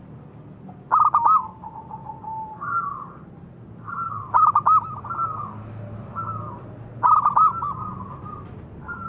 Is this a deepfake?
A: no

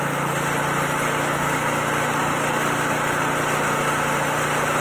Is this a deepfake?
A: no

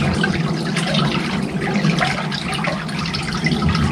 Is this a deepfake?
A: no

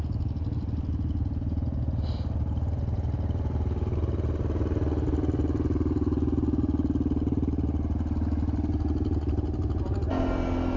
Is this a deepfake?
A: no